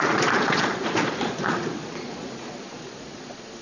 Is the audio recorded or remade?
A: remade